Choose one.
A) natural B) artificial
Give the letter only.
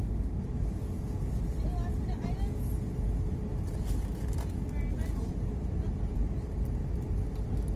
A